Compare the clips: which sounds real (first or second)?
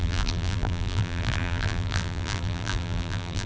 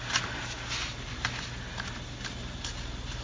second